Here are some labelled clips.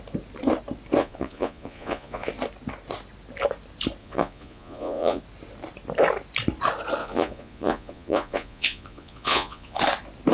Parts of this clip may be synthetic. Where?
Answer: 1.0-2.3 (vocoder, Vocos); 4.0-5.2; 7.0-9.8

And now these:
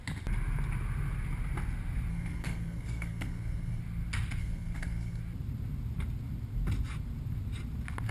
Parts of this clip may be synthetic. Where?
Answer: 2.1-3.8 (codec, SNAC); 4.4-5.2

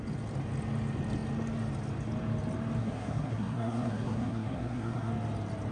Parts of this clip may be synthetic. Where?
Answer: 2.8-5.1 (codec, SNAC)